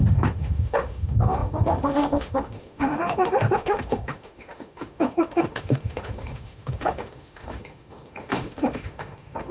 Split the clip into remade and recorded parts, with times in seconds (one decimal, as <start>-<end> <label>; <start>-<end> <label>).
0.0-9.5 remade